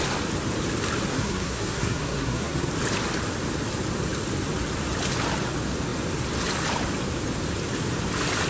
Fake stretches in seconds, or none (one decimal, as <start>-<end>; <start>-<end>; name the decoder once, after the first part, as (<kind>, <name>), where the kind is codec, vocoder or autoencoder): 1.1-2.7 (codec, SNAC)

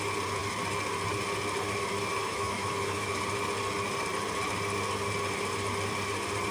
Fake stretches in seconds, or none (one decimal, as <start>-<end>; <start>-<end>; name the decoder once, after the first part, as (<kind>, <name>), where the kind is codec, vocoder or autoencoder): 2.2-3.1 (autoencoder, DAC-VAE)

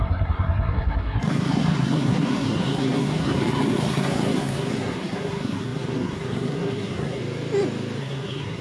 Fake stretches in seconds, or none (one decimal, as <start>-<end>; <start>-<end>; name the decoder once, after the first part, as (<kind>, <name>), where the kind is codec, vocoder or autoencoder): 0.0-7.2 (codec, SNAC); 8.0-8.6

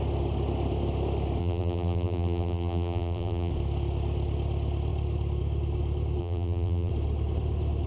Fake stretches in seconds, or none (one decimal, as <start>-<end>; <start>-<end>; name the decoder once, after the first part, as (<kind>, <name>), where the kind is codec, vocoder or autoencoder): 1.4-3.5 (vocoder, BigVGAN v2); 6.2-6.9

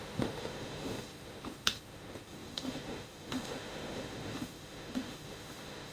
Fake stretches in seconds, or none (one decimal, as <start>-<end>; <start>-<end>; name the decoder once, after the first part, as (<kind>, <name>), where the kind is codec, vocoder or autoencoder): 0.0-5.9 (autoencoder, DAC-VAE)